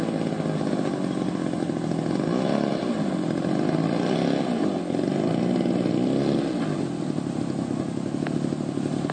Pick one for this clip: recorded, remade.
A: recorded